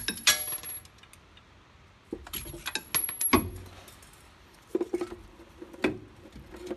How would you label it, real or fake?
real